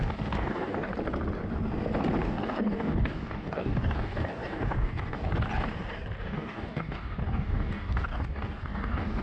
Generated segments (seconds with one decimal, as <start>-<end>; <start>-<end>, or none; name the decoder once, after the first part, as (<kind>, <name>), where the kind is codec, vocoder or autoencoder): 0.0-0.9 (codec, DAC); 2.2-5.3; 6.2-9.2